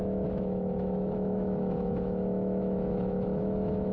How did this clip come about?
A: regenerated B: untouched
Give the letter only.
A